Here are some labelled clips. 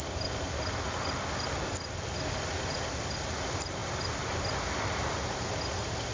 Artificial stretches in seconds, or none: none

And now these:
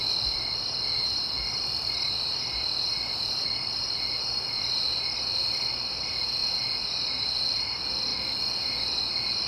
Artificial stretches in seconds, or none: 0.0-6.4 (vocoder, BigVGAN v2); 7.2-9.5

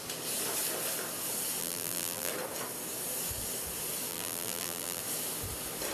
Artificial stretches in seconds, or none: 1.6-2.3 (vocoder, BigVGAN v2); 4.1-5.0

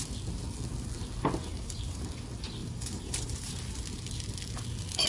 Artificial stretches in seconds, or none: 1.5-2.1 (vocoder, BigVGAN v2); 2.6-3.5

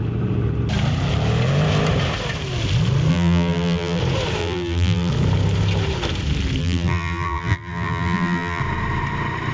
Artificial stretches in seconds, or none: 3.1-4.0 (vocoder, BigVGAN v2); 4.4-5.1; 6.6-8.6